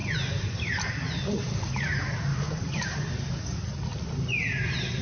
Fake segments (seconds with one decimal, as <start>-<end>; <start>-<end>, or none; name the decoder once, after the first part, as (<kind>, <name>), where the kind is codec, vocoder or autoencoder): 0.0-1.7 (vocoder, BigVGAN v2); 2.3-3.1